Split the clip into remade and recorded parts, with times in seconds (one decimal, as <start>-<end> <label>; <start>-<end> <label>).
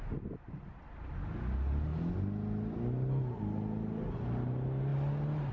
0.0-5.5 recorded